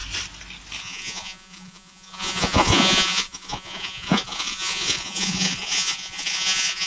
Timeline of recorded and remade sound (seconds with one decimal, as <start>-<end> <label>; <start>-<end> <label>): 0.0-0.8 recorded; 0.8-6.9 remade